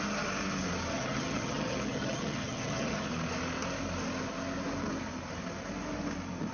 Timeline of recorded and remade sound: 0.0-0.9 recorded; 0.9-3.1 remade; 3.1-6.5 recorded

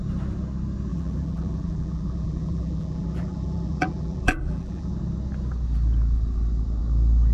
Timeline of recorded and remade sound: 0.0-0.9 recorded; 0.9-4.9 remade; 4.9-7.3 recorded

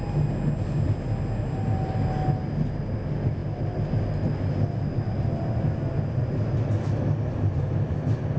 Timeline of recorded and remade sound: 0.0-8.4 recorded

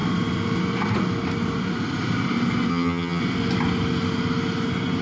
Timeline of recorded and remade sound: 0.0-2.7 recorded; 2.7-3.2 remade; 3.2-5.0 recorded

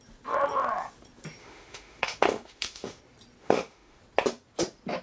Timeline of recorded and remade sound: 0.0-1.4 recorded; 1.4-3.0 remade; 3.0-3.4 recorded; 3.4-4.0 remade; 4.0-5.0 recorded

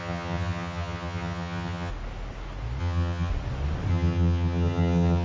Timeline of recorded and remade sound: 0.0-1.9 remade; 1.9-2.8 recorded; 2.8-3.3 remade; 3.3-3.9 recorded; 3.9-5.2 remade

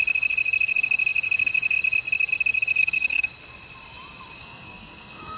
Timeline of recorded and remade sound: 0.0-2.8 recorded; 2.8-3.3 remade; 3.3-4.4 recorded; 4.4-5.4 remade

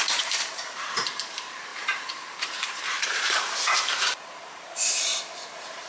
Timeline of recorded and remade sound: 0.0-5.9 remade